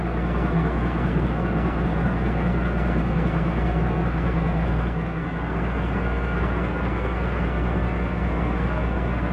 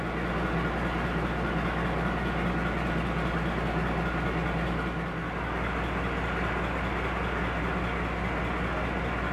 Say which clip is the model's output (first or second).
first